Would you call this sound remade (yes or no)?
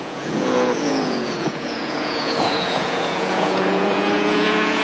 yes